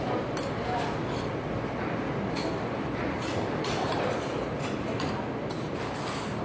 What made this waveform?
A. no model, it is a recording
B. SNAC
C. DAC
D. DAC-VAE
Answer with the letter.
A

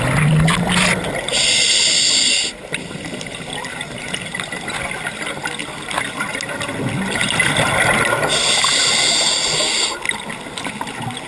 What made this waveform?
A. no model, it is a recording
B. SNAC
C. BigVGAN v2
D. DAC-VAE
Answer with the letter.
A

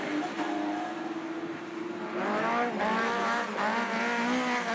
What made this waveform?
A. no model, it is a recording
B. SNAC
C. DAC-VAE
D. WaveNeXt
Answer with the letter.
A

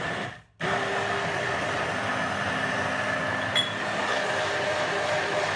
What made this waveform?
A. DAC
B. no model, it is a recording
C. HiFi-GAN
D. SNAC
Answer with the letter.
B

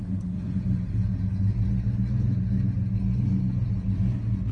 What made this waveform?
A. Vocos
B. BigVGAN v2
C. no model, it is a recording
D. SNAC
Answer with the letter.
C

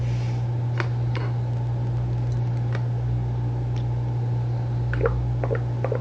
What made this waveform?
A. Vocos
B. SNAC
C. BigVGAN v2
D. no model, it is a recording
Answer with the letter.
D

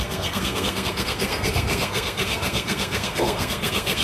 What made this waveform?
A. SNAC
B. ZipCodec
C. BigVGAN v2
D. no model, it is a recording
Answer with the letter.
A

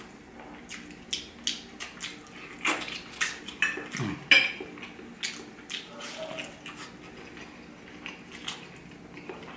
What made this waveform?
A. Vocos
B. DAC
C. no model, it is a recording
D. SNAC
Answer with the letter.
C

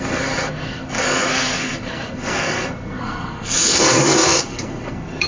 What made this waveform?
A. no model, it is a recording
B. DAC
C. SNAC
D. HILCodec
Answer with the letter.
C